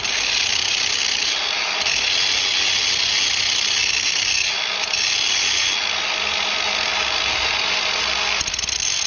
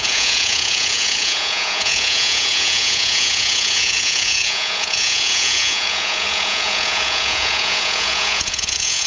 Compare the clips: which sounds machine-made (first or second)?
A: second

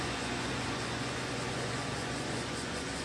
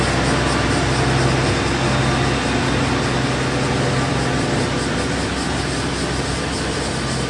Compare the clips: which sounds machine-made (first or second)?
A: first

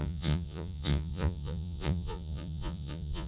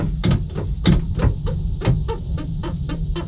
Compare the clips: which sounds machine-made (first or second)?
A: first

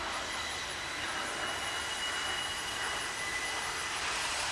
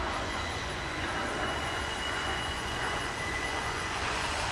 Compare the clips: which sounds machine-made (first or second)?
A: second